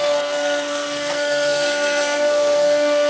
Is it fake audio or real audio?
fake